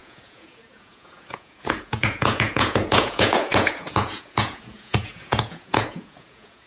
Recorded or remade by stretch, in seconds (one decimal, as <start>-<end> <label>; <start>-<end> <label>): 0.0-6.7 remade